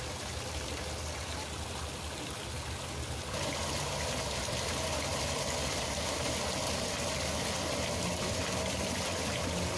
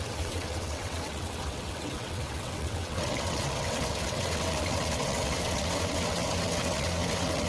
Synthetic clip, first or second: second